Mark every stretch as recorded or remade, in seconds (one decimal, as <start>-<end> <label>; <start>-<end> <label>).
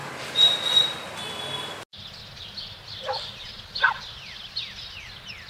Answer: 0.0-5.5 recorded